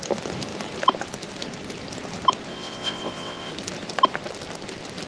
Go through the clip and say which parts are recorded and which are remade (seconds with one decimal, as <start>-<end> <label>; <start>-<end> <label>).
0.0-2.5 recorded; 2.5-3.5 remade; 3.5-5.1 recorded